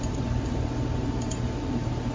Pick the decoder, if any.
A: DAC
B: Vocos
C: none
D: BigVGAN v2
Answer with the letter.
D